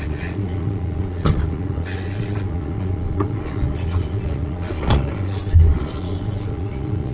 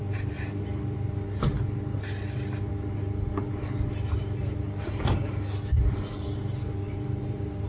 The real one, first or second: second